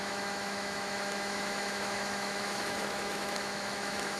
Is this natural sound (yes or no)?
no